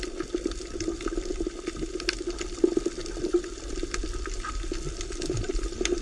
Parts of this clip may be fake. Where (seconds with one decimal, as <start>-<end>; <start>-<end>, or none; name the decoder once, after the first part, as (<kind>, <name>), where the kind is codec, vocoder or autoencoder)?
none